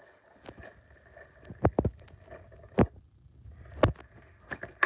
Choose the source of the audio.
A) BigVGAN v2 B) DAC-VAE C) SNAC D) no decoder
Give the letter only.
D